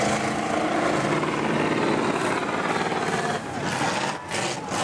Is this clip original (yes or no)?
yes